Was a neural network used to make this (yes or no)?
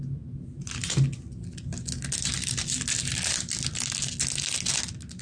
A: no